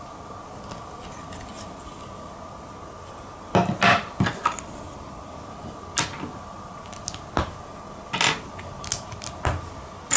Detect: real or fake real